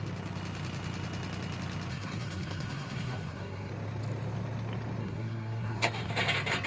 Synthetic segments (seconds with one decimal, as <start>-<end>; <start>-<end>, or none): 1.9-3.7; 5.0-6.1